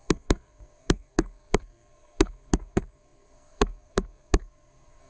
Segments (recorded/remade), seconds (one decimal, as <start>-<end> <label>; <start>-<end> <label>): 0.0-5.1 remade